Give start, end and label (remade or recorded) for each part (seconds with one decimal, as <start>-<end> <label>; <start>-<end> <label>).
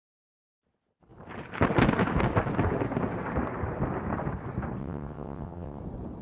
0.0-4.8 recorded; 4.8-5.8 remade; 5.8-6.2 recorded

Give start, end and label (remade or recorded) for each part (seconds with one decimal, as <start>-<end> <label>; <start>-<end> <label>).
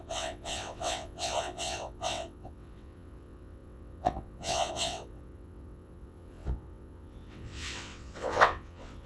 0.0-9.1 remade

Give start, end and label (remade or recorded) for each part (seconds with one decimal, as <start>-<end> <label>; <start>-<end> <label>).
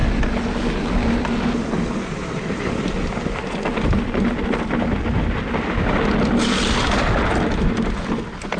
0.0-8.6 recorded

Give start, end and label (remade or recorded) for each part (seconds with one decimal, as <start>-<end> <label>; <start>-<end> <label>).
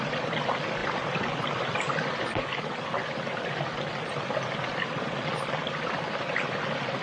0.0-7.0 recorded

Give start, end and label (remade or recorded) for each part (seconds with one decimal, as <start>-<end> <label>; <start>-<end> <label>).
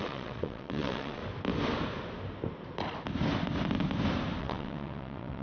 0.0-1.2 remade; 1.2-4.4 recorded; 4.4-5.4 remade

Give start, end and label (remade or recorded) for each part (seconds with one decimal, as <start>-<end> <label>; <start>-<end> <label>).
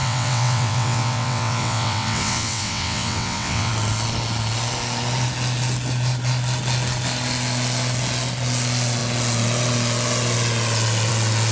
0.0-3.7 remade; 3.7-11.5 recorded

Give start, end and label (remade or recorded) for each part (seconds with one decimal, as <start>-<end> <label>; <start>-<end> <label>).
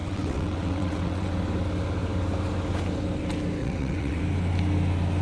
0.0-1.3 remade; 1.3-3.6 recorded; 3.6-4.2 remade; 4.2-5.2 recorded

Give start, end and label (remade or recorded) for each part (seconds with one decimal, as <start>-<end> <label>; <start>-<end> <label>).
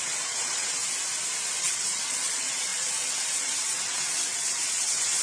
0.0-0.8 remade; 0.8-1.6 recorded; 1.6-5.2 remade